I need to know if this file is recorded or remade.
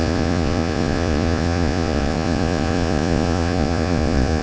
remade